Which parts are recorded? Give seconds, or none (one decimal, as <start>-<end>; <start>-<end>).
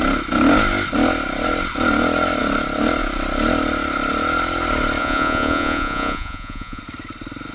0.0-5.0; 6.8-7.5